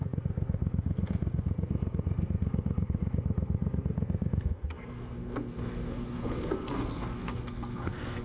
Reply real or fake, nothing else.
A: fake